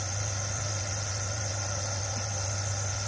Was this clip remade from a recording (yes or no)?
no